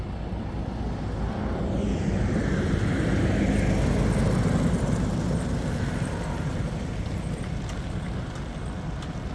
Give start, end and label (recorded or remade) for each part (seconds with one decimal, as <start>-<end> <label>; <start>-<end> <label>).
0.0-2.4 recorded; 2.4-3.4 remade; 3.4-9.3 recorded